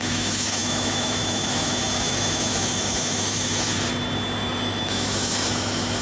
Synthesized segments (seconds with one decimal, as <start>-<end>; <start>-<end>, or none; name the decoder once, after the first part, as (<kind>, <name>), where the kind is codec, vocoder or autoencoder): 0.0-3.9 (autoencoder, DAC-VAE); 4.6-6.0